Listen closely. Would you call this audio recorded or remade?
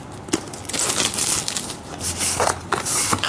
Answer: recorded